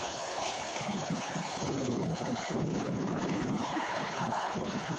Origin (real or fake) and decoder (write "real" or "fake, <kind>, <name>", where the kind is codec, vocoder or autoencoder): fake, codec, HILCodec